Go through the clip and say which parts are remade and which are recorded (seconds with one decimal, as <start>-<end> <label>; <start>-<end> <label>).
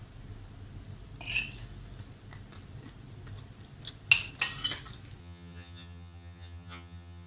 0.0-5.2 recorded; 5.2-7.3 remade